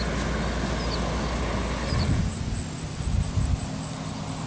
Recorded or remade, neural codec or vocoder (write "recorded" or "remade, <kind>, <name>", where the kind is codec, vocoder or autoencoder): recorded